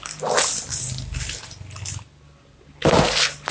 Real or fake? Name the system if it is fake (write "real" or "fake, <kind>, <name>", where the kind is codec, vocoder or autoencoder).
real